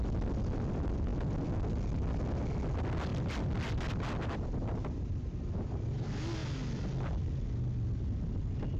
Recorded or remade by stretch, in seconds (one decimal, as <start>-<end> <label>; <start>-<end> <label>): 0.0-8.8 recorded

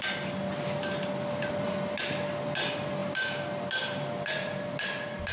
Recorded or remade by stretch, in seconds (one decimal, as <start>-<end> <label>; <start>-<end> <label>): 0.0-5.3 recorded

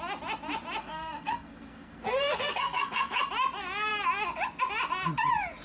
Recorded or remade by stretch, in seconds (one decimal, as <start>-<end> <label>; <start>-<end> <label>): 0.0-0.8 recorded; 0.8-3.2 remade; 3.2-5.6 recorded

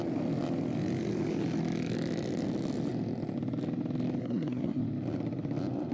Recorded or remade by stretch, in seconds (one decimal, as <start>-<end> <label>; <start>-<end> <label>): 0.0-4.2 recorded; 4.2-4.8 remade; 4.8-5.9 recorded

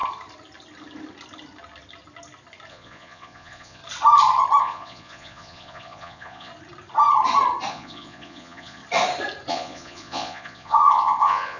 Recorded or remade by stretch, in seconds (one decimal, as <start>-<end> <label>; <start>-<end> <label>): 0.0-2.7 recorded; 2.7-3.8 remade; 3.8-4.6 recorded; 4.6-6.5 remade; 6.5-7.7 recorded; 7.7-8.8 remade; 8.8-9.5 recorded; 9.5-11.6 remade

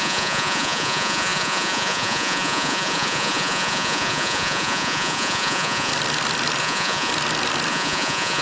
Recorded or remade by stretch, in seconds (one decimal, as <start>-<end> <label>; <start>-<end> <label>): 0.0-5.9 remade; 5.9-6.6 recorded; 6.6-7.1 remade; 7.1-7.7 recorded; 7.7-8.4 remade

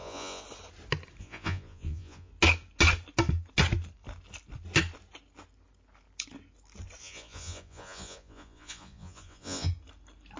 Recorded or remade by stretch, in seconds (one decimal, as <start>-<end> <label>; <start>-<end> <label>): 0.0-0.4 remade; 0.4-1.2 recorded; 1.2-2.3 remade; 2.3-7.0 recorded; 7.0-9.7 remade; 9.7-10.4 recorded